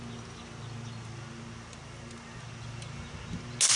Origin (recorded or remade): recorded